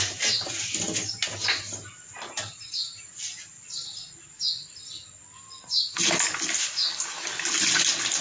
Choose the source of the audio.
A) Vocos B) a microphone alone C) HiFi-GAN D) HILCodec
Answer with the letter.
B